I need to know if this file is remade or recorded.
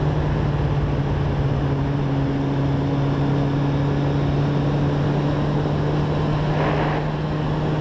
recorded